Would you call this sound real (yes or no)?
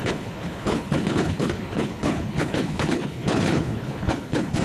no